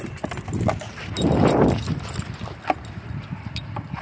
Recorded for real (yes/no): no